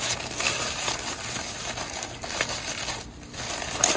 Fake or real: real